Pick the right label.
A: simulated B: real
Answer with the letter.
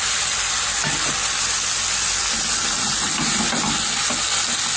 B